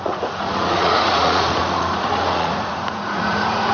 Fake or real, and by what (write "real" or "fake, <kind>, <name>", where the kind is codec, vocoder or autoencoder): fake, vocoder, Vocos